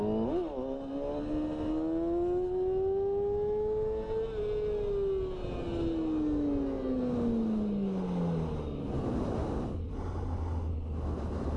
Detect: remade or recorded recorded